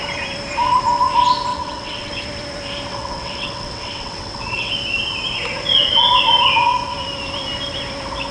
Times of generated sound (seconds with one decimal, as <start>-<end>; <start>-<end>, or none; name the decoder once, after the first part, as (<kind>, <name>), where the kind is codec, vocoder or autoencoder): 1.5-2.1 (vocoder, WaveNeXt); 2.9-4.7